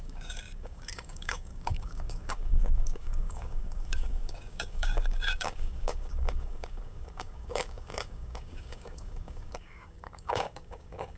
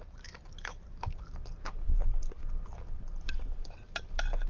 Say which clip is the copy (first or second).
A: first